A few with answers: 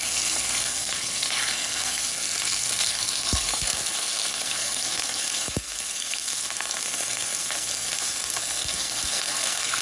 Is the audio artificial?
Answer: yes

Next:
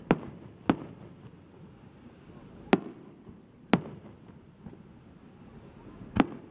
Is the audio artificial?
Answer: no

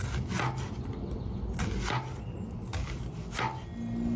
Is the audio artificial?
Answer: no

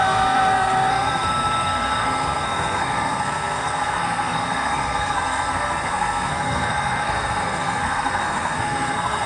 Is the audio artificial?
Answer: yes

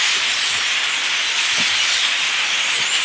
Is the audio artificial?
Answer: no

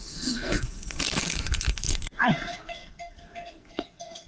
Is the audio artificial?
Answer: yes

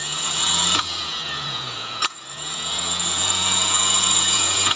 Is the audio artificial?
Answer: yes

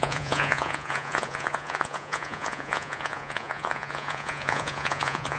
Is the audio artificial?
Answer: yes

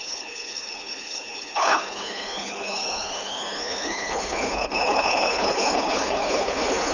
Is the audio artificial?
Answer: yes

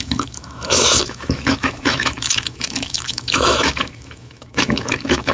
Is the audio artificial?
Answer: yes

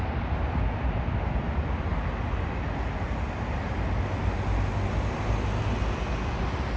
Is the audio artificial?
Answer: no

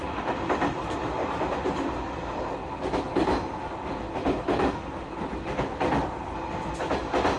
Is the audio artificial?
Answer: no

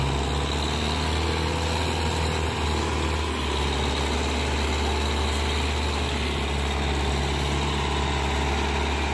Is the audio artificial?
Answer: no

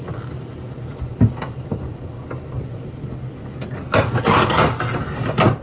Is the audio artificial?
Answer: no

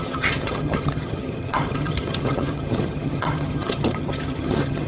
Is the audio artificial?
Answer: yes